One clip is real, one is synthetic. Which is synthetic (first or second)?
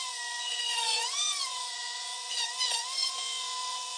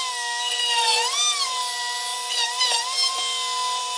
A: first